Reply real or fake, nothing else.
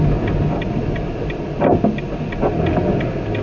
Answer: real